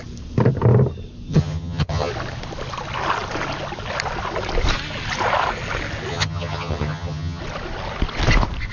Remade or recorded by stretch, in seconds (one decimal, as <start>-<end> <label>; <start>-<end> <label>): 0.0-1.3 recorded; 1.3-2.1 remade; 2.1-6.1 recorded; 6.1-7.4 remade; 7.4-8.7 recorded